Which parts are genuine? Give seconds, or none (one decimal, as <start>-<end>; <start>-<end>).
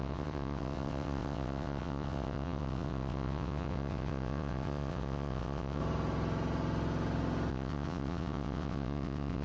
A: 5.8-7.5